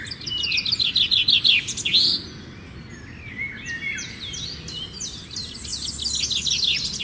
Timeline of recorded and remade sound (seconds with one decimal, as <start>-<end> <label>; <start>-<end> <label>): 0.0-7.0 recorded